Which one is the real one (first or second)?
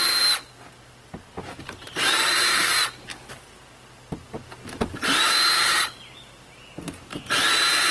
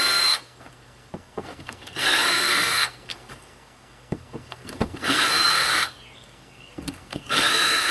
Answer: first